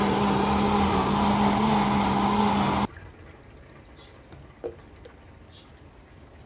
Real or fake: real